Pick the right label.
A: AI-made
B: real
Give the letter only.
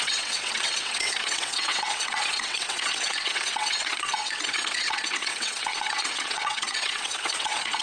A